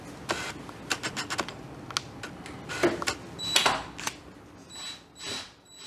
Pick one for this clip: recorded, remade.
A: recorded